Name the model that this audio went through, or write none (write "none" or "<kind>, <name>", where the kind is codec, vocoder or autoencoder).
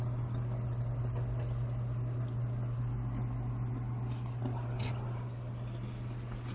none